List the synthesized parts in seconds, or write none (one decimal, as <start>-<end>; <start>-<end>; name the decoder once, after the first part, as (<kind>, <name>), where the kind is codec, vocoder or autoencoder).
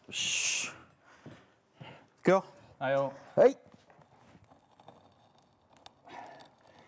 none